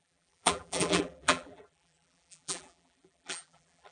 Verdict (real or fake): fake